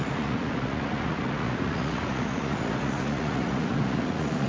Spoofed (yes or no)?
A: yes